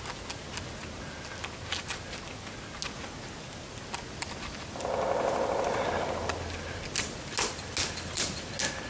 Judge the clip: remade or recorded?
recorded